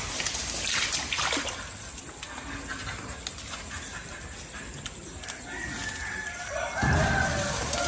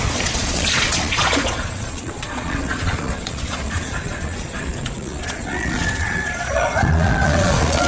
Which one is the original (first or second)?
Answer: first